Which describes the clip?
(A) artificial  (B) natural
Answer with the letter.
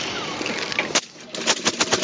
B